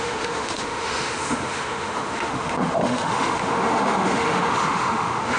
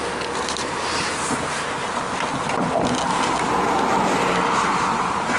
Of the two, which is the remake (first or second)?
first